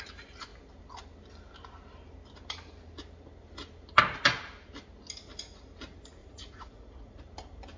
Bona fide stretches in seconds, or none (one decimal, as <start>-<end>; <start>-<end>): 0.0-6.2; 7.2-7.8